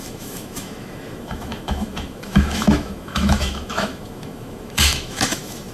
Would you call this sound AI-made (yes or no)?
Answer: yes